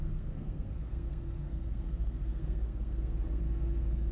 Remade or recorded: remade